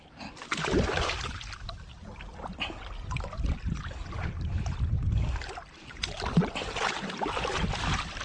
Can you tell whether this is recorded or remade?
recorded